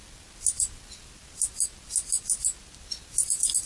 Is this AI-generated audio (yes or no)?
no